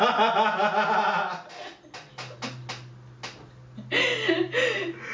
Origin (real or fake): real